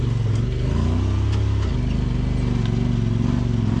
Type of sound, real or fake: real